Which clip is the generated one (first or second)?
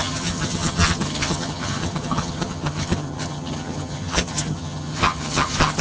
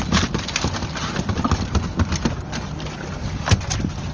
first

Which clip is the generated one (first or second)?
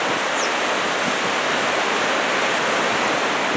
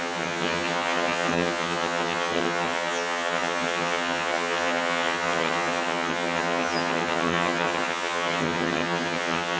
second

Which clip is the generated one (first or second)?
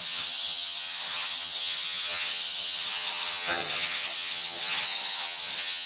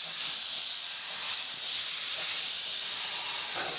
first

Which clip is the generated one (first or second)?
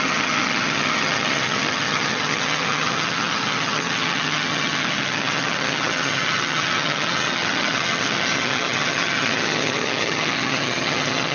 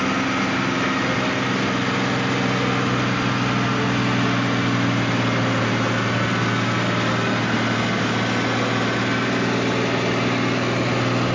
first